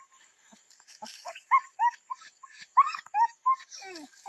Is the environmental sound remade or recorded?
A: remade